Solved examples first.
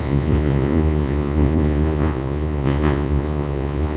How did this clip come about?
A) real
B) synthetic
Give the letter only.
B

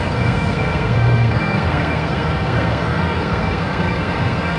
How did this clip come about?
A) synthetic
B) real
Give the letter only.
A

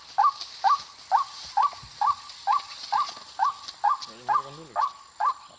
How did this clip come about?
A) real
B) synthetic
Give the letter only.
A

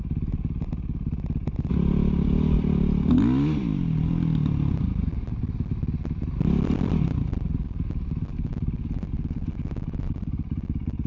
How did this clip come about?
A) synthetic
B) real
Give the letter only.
B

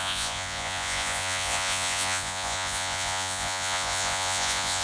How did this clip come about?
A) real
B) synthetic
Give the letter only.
B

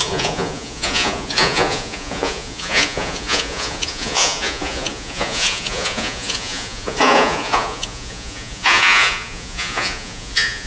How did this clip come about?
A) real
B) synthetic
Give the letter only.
B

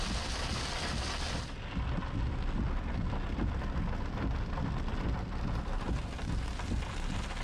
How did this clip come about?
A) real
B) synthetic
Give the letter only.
A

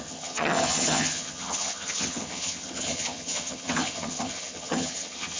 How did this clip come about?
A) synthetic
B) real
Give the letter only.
A